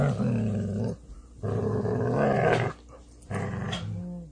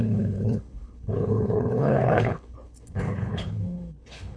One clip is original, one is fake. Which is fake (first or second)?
second